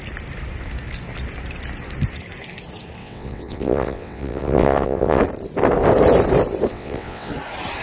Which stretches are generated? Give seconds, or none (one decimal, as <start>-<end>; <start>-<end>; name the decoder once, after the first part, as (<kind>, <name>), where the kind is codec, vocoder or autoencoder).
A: 3.0-5.2 (vocoder, WaveNeXt); 6.7-7.3